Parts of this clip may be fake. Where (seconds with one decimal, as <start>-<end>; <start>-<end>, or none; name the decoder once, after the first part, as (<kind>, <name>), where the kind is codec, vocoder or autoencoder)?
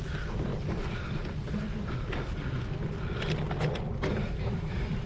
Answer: none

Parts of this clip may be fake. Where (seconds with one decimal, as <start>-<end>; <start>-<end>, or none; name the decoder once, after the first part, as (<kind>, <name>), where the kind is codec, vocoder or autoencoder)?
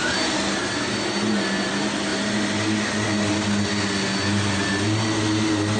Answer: none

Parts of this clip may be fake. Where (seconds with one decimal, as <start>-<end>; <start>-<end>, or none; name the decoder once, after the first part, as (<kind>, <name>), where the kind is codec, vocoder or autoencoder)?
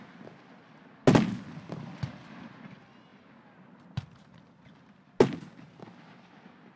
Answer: none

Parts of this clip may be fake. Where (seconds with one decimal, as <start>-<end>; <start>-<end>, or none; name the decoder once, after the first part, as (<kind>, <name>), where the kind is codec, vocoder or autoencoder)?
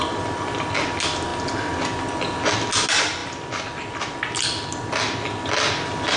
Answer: none